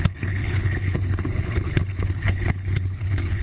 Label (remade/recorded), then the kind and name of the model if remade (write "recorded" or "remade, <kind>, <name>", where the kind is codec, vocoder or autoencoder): remade, codec, HILCodec